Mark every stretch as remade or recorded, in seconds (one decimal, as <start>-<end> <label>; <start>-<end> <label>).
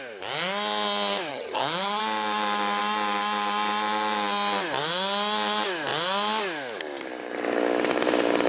0.0-1.3 recorded; 1.3-2.0 remade; 2.0-8.5 recorded